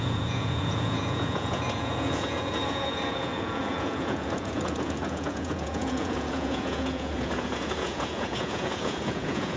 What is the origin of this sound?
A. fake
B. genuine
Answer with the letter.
A